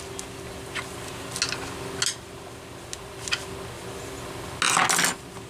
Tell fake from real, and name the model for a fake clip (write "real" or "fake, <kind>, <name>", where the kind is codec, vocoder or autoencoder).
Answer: real